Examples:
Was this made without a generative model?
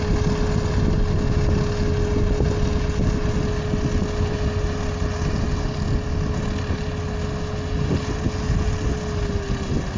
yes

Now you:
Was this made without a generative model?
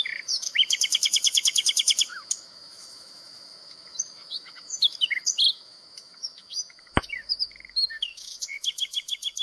no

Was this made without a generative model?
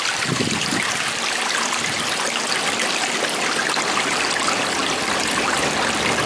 yes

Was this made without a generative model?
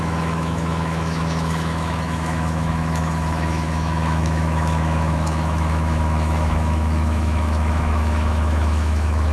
no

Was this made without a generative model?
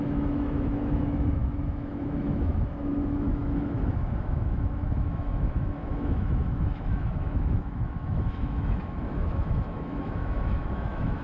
no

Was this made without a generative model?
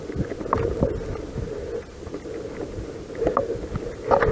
yes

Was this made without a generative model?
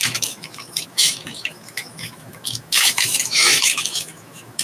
no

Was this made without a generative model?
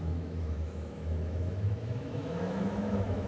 no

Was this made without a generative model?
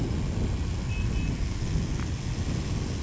yes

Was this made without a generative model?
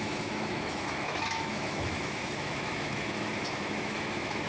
no